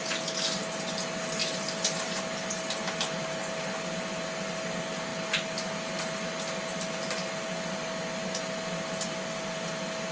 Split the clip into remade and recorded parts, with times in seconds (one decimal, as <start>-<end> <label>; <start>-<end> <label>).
0.0-10.1 recorded